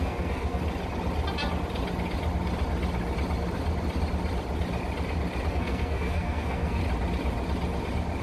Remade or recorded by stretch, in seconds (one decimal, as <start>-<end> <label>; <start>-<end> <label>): 0.0-0.6 remade; 0.6-5.5 recorded; 5.5-6.8 remade; 6.8-8.2 recorded